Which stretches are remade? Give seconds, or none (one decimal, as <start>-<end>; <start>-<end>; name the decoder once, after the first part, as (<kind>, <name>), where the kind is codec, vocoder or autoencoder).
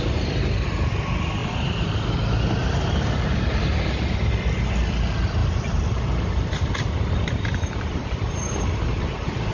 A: 5.4-9.5 (vocoder, BigVGAN v2)